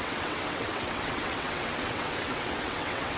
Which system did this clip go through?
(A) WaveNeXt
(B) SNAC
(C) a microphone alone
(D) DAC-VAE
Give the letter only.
A